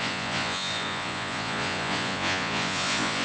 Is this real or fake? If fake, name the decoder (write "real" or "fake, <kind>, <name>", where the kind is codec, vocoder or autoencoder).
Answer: fake, vocoder, Vocos